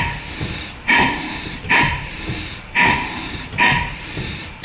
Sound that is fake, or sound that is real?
fake